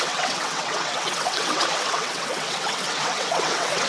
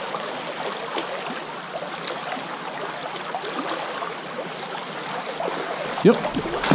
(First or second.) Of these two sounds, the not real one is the first